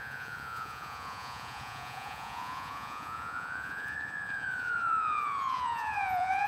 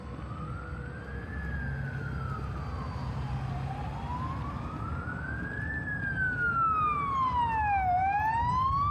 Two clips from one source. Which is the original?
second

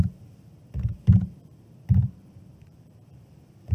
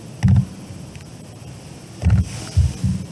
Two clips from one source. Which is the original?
second